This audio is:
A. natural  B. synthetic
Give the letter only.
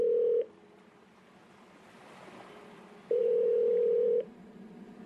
B